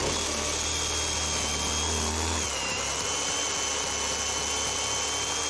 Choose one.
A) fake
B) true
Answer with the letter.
B